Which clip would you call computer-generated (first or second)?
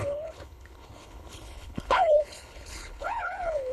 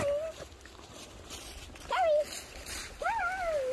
first